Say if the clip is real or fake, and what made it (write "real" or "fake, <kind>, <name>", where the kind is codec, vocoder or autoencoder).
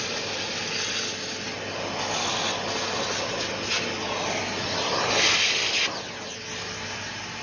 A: real